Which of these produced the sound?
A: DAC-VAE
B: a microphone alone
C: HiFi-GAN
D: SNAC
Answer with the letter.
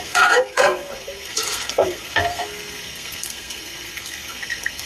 D